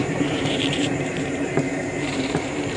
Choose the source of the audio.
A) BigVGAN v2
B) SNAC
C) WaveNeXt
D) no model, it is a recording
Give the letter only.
A